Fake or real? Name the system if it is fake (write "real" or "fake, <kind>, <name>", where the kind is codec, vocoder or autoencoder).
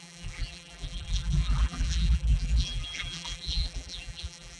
fake, vocoder, BigVGAN v2